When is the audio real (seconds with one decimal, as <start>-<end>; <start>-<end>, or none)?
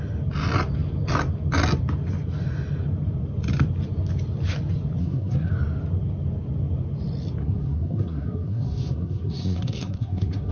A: 0.0-5.0; 5.5-7.4